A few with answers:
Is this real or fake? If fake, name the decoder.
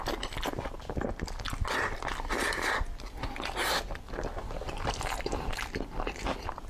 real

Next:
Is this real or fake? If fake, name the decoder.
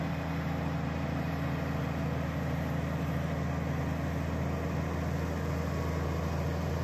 real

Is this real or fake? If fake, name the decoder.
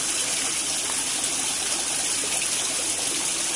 real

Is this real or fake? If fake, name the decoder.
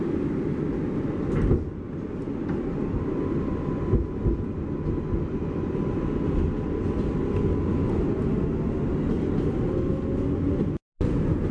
real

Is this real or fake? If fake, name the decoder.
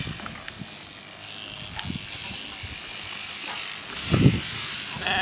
real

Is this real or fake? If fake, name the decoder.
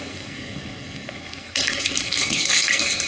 fake, codec, SNAC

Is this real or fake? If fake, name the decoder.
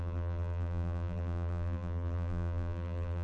fake, vocoder, BigVGAN v2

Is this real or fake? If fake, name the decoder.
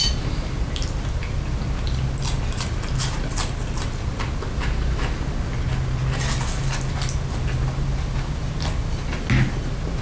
real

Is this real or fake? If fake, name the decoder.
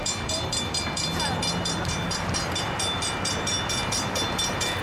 fake, vocoder, BigVGAN v2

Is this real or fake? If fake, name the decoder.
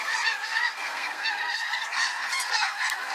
fake, codec, SNAC